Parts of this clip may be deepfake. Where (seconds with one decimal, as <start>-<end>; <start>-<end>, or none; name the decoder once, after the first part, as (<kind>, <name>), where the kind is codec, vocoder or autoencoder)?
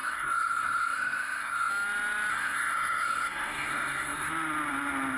0.0-1.7 (codec, SNAC); 2.3-4.3